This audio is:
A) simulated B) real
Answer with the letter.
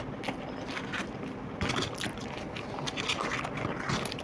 B